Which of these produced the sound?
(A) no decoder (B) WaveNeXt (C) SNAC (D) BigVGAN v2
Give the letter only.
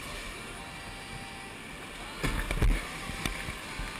A